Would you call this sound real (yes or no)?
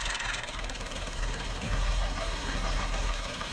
no